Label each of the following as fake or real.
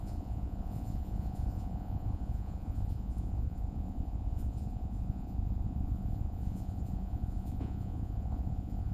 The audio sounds fake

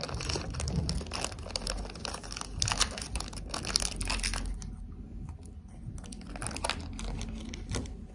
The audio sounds real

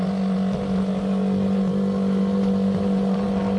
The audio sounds real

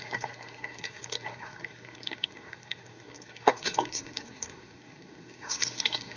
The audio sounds fake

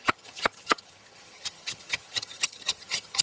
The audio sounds fake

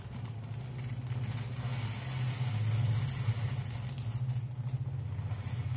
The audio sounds real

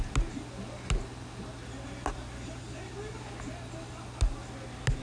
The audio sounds real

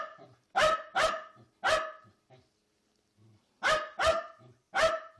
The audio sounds real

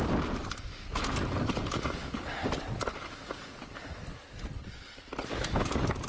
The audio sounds real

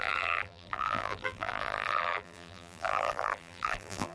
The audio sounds fake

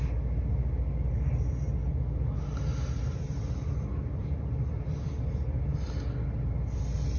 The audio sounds real